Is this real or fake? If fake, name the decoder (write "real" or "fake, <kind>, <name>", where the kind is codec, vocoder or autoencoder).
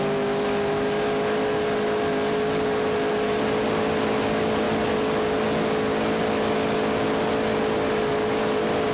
real